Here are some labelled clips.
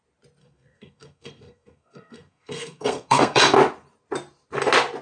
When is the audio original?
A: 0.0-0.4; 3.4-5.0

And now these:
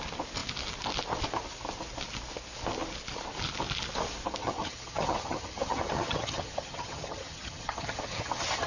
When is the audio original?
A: 0.0-4.4

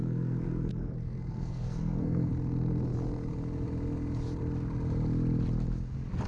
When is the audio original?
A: 2.3-6.3